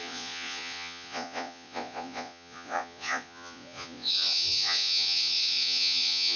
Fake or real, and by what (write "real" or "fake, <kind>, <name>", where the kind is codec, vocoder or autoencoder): fake, vocoder, Vocos